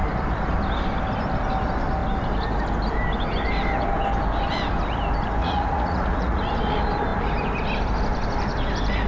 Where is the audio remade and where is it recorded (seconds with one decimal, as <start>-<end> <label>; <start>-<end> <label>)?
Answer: 0.0-5.4 recorded; 5.4-6.5 remade; 6.5-9.1 recorded